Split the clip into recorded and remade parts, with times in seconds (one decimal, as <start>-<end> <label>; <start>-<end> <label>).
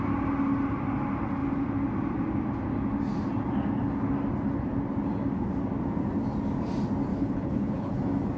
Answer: 0.0-7.1 recorded; 7.1-8.0 remade; 8.0-8.4 recorded